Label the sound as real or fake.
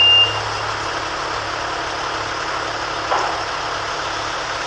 real